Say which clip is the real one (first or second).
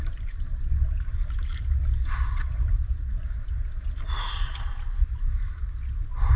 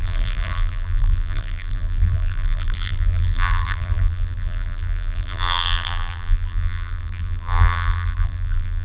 first